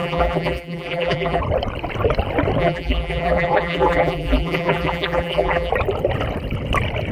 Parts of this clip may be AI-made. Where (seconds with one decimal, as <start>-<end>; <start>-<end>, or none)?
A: 0.0-1.4; 2.6-5.7